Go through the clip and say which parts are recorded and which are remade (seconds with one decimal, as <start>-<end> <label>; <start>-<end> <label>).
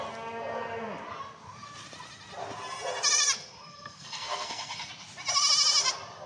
0.0-3.7 recorded; 3.7-4.9 remade; 4.9-6.3 recorded